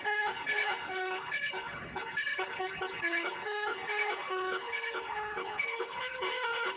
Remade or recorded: remade